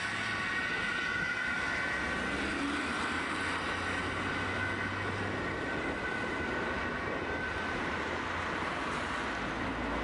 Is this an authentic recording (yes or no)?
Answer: yes